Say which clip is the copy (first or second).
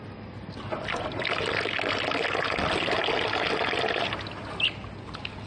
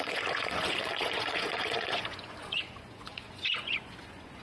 second